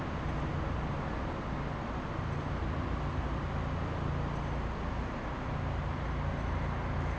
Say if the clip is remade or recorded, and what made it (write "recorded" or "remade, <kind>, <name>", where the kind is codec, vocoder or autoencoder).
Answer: recorded